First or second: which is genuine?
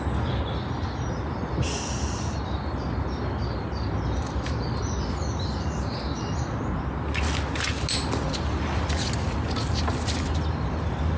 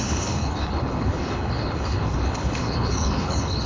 first